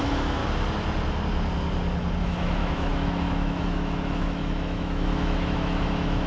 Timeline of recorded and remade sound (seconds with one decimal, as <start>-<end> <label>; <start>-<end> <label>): 0.0-0.4 remade; 0.4-2.2 recorded; 2.2-6.3 remade